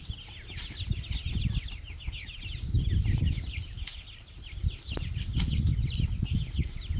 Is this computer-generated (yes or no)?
no